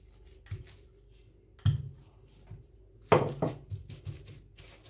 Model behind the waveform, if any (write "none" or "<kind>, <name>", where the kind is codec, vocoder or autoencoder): none